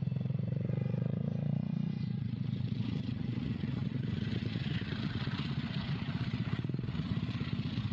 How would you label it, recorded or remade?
remade